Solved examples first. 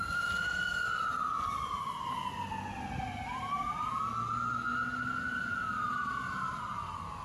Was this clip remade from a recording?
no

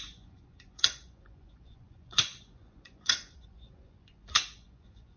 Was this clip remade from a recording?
yes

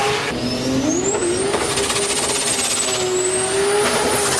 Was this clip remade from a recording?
no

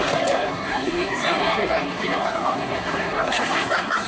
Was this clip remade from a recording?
yes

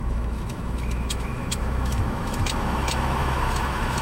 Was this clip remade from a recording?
yes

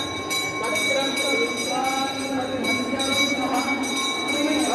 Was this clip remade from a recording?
no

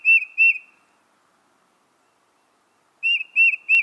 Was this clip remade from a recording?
no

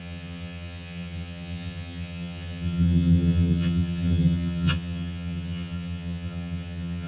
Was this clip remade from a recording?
yes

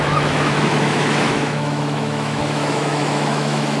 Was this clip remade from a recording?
yes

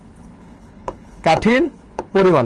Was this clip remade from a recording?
yes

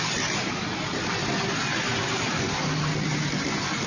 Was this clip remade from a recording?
no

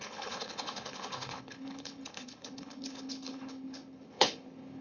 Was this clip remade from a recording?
yes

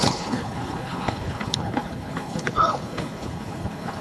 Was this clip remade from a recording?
yes